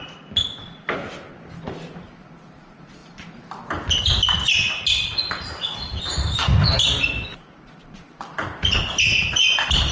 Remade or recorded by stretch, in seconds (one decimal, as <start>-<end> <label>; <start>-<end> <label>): 0.0-9.9 recorded